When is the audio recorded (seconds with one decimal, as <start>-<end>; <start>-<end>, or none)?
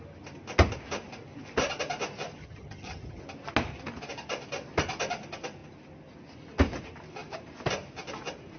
0.0-2.4; 3.2-8.6